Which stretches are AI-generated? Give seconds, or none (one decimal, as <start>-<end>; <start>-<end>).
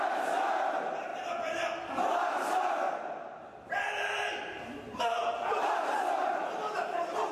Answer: 0.0-1.1; 2.7-7.3